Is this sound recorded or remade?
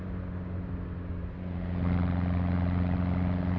recorded